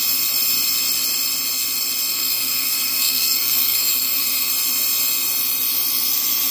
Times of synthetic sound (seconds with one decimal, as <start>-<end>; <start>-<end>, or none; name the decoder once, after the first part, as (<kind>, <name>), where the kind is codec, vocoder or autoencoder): 2.1-4.5 (codec, SNAC)

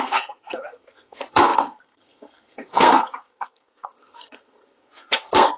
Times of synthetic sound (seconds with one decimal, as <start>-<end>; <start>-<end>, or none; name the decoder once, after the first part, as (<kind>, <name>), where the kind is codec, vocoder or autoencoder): 0.0-5.6 (codec, SNAC)